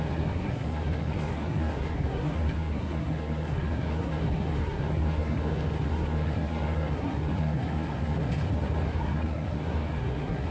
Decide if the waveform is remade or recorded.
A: remade